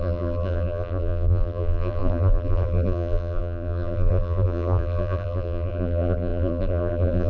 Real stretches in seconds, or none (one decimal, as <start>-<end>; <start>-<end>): none